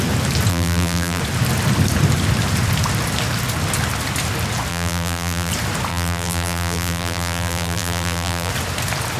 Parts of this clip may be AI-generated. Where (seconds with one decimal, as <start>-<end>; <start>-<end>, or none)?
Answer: 0.5-1.2; 4.7-5.5; 5.9-8.5